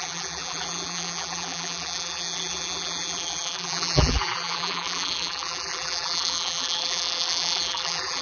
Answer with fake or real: fake